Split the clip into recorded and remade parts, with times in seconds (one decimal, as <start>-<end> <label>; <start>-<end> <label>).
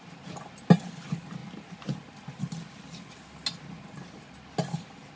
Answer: 0.0-5.2 recorded